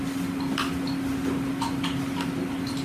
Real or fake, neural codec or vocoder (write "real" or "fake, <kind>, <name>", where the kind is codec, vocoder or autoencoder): real